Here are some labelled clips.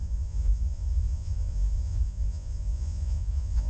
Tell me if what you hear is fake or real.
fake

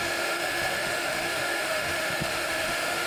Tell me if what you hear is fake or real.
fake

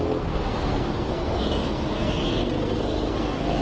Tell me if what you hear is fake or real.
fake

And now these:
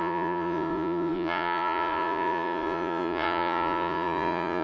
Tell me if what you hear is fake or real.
fake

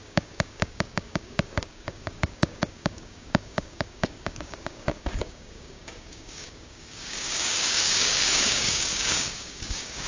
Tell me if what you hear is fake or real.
fake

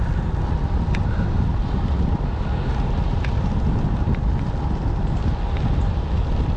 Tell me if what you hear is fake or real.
real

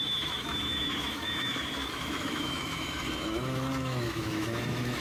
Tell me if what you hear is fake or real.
fake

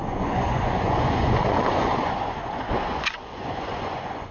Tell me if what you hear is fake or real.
fake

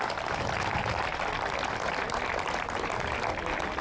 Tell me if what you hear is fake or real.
real